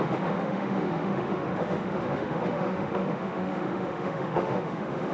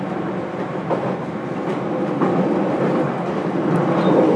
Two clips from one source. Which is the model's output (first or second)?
first